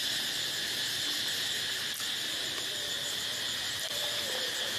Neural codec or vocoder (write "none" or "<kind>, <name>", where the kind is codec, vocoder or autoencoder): none